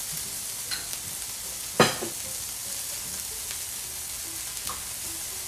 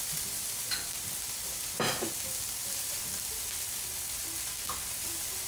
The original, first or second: first